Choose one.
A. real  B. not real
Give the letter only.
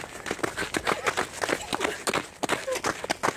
A